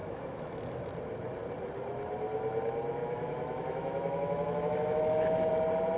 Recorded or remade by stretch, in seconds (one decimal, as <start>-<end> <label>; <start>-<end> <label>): 0.0-0.9 remade; 0.9-3.0 recorded; 3.0-5.5 remade; 5.5-6.0 recorded